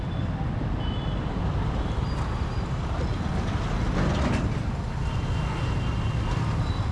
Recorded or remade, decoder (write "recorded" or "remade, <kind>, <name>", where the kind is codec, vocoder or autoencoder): recorded